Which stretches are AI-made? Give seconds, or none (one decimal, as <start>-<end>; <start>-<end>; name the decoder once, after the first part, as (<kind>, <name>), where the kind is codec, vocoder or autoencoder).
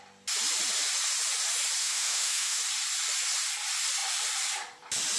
1.8-2.6 (autoencoder, DAC-VAE)